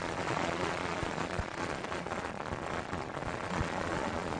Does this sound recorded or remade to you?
remade